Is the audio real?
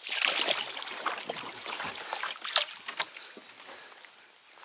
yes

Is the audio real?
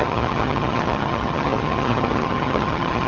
no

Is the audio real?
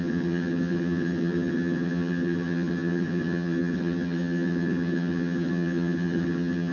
no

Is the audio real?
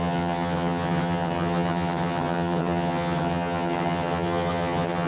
no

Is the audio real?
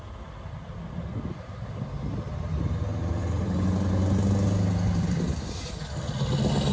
yes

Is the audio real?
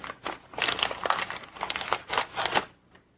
yes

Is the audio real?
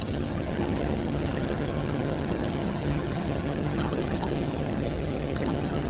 no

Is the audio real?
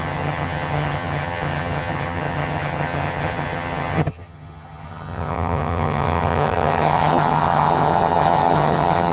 no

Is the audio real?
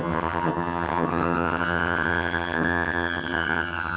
no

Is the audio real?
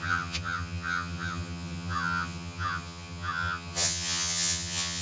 no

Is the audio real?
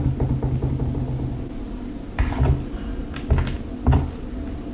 yes